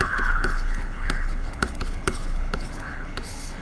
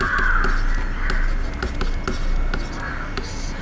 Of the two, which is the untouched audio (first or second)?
second